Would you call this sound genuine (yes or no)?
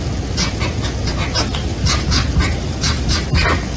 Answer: yes